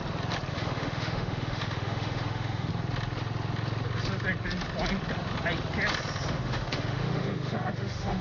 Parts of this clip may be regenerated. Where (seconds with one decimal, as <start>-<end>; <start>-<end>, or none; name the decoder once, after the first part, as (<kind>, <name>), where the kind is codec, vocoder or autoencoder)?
0.5-2.7 (autoencoder, DAC-VAE); 6.3-8.2